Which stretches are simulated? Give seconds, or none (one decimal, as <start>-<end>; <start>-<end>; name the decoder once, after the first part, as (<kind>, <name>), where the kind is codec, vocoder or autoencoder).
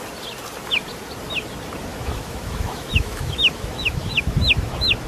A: 1.9-5.1 (autoencoder, DAC-VAE)